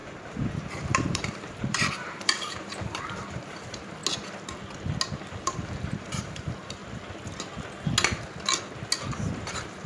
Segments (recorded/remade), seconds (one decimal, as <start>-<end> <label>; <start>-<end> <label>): 0.0-4.0 remade; 4.0-5.4 recorded; 5.4-6.8 remade; 6.8-9.1 recorded; 9.1-9.9 remade